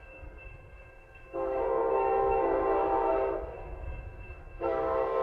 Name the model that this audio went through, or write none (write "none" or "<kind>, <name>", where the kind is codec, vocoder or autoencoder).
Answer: codec, SNAC